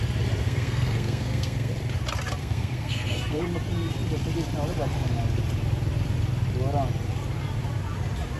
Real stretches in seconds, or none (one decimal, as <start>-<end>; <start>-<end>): 0.0-0.4; 1.7-2.4; 3.4-8.4